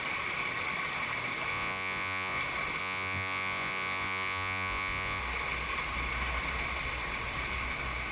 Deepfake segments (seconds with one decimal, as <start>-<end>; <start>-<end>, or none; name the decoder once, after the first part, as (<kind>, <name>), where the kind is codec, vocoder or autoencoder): 1.5-2.4 (vocoder, Vocos); 2.8-5.2